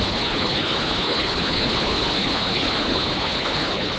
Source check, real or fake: fake